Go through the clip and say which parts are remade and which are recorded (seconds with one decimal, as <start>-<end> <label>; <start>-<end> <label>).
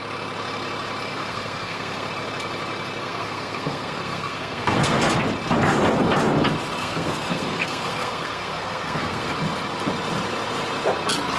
0.0-1.1 recorded; 1.1-2.1 remade; 2.1-3.0 recorded; 3.0-5.0 remade; 5.0-6.8 recorded; 6.8-9.3 remade; 9.3-11.4 recorded